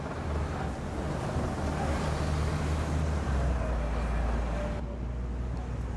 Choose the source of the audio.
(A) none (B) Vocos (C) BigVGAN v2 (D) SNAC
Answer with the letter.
A